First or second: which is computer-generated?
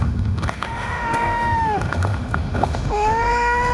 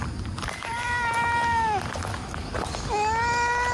first